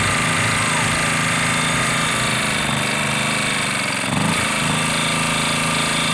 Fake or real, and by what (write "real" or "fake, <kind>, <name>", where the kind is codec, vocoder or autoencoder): real